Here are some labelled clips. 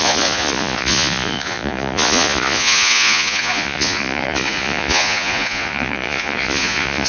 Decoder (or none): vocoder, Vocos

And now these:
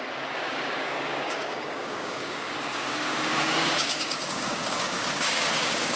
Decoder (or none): codec, DAC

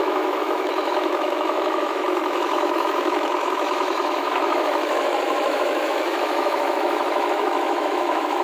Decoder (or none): autoencoder, DAC-VAE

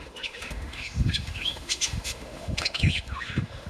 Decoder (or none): autoencoder, DAC-VAE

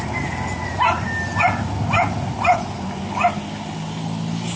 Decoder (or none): none